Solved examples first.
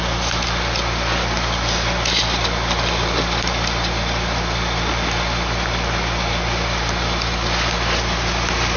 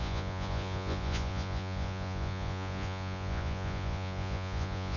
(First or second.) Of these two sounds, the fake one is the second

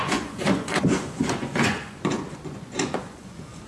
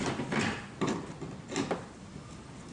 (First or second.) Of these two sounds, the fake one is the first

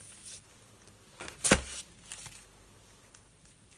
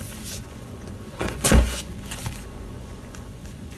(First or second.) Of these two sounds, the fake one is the second